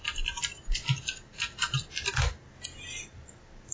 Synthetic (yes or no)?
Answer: no